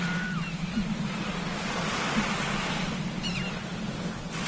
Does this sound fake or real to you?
real